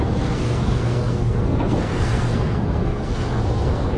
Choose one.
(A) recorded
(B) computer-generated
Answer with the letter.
B